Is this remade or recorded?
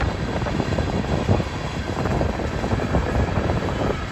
remade